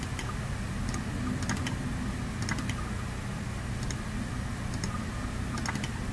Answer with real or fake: real